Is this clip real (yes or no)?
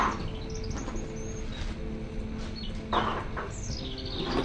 yes